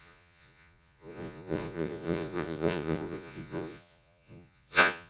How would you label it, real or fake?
fake